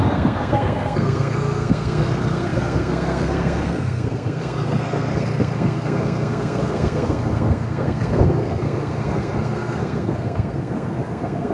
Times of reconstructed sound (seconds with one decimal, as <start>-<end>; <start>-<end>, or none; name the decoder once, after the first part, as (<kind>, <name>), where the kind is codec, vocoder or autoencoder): 0.0-11.5 (codec, SNAC)